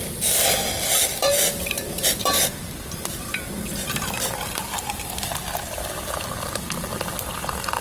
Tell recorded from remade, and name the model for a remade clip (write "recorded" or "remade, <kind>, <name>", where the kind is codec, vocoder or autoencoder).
recorded